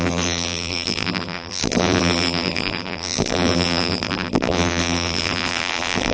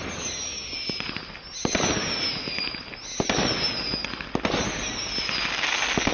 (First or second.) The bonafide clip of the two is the second